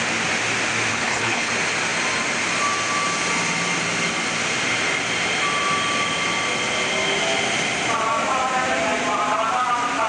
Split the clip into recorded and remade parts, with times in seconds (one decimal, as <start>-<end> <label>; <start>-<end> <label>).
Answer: 0.0-0.9 recorded; 0.9-1.5 remade; 1.5-10.1 recorded